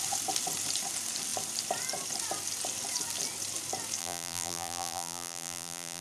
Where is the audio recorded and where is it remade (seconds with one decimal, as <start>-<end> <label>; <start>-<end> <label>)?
0.0-4.0 recorded; 4.0-6.0 remade